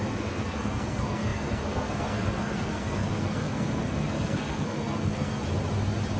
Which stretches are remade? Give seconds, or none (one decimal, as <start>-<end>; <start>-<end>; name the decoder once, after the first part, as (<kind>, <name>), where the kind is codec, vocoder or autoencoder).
0.0-5.4 (codec, SNAC)